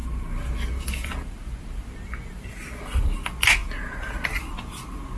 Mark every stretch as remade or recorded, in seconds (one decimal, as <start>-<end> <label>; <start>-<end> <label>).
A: 0.0-5.2 recorded